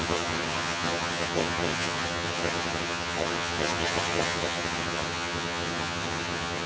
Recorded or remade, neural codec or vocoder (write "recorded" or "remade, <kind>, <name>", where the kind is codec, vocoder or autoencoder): remade, vocoder, HiFi-GAN